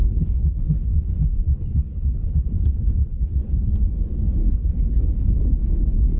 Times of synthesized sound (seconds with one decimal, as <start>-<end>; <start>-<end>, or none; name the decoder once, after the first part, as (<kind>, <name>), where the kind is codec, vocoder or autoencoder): 0.0-3.7 (codec, HILCodec); 4.4-6.2